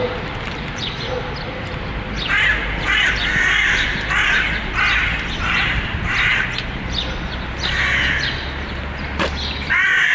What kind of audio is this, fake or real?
real